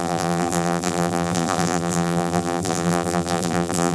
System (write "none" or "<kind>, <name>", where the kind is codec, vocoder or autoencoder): vocoder, BigVGAN v2